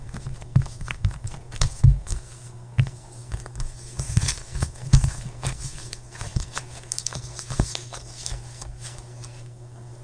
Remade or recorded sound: remade